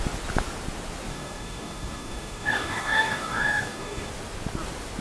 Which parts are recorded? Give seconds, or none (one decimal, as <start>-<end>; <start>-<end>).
0.0-1.1; 4.1-5.0

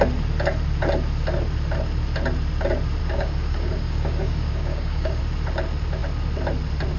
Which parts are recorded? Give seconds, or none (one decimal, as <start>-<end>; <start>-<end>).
0.0-3.0; 5.2-7.0